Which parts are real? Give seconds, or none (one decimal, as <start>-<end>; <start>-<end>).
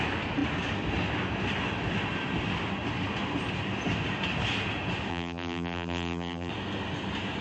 0.0-5.1; 6.5-7.4